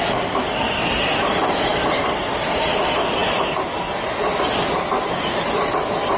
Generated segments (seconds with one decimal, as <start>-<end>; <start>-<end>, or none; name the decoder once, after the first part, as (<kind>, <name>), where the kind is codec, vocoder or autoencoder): none